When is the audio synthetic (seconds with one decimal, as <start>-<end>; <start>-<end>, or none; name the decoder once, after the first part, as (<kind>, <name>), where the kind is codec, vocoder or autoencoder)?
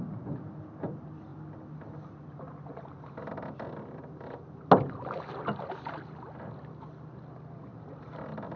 7.7-8.6 (vocoder, BigVGAN v2)